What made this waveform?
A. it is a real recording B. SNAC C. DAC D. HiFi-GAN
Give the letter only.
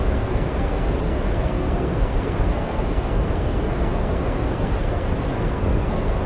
B